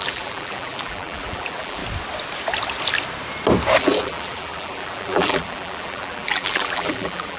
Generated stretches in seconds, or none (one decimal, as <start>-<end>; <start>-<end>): 0.0-1.8; 3.8-7.4